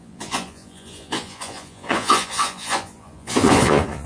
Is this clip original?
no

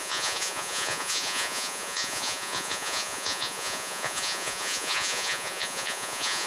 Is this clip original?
no